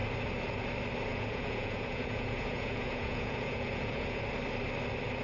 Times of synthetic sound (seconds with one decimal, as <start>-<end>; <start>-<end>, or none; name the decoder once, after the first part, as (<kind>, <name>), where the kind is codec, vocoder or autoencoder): 1.1-4.2 (vocoder, Vocos)